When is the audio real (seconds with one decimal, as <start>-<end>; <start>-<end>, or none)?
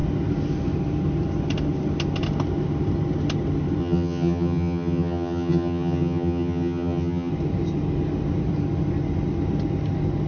0.0-3.8; 7.3-10.3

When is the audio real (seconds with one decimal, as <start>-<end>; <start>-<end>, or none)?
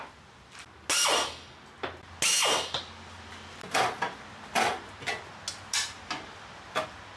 0.0-7.2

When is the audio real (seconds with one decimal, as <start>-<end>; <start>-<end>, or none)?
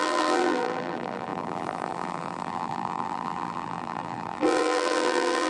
none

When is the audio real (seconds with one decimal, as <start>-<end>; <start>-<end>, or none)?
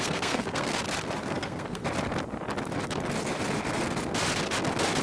0.7-1.2; 1.8-5.0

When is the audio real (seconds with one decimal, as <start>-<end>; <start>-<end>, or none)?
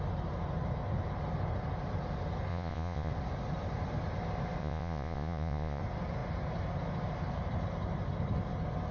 0.0-2.5; 3.1-4.6; 5.8-8.9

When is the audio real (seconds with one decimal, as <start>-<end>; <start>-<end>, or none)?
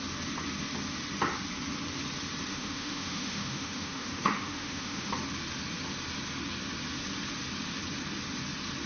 0.0-2.5; 5.1-8.9